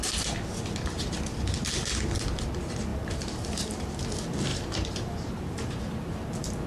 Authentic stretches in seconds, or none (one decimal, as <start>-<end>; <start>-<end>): 0.0-2.9; 4.0-4.5; 6.3-6.7